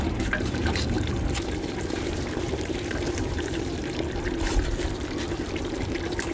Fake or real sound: fake